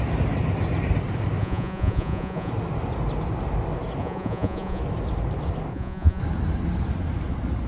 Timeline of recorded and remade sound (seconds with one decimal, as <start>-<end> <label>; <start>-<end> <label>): 0.0-1.4 recorded; 1.4-2.5 remade; 2.5-4.0 recorded; 4.0-4.8 remade; 4.8-5.7 recorded; 5.7-6.2 remade; 6.2-7.7 recorded